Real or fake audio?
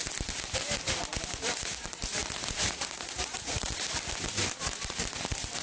real